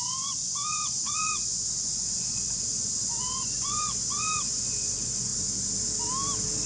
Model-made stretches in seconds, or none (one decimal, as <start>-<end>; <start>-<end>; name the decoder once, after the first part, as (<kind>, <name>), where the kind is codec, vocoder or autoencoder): 0.0-5.3 (vocoder, Vocos)